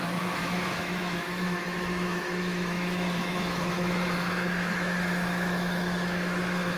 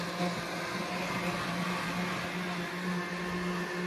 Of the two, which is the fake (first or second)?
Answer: first